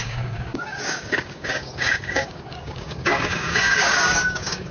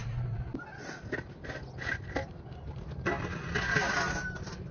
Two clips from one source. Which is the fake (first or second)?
first